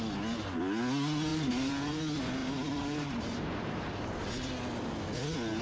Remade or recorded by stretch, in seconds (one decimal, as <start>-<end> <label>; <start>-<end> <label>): 0.0-1.3 recorded; 1.3-2.0 remade; 2.0-2.4 recorded; 2.4-4.3 remade; 4.3-5.6 recorded